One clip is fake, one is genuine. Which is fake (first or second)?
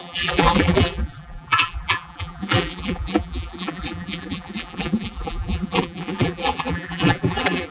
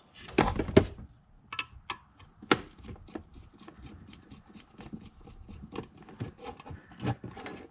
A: first